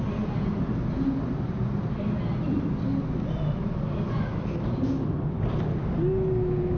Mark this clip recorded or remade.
recorded